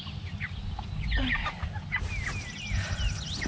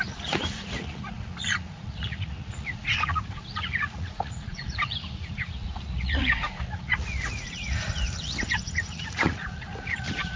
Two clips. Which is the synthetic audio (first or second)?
second